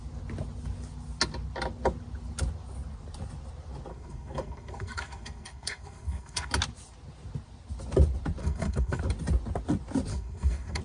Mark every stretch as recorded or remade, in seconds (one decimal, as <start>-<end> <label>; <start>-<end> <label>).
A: 0.0-3.9 recorded; 3.9-6.5 remade; 6.5-8.4 recorded; 8.4-9.0 remade; 9.0-10.1 recorded; 10.1-10.8 remade